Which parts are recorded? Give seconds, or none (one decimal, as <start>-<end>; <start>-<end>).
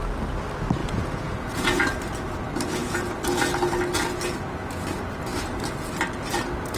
0.0-0.8; 1.9-6.8